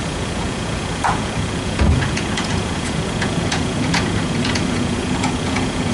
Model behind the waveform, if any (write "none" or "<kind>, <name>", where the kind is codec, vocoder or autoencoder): vocoder, Vocos